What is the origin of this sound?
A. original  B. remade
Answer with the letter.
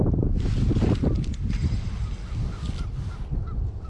A